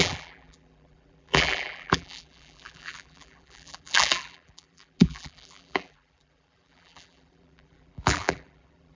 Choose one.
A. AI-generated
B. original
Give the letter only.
A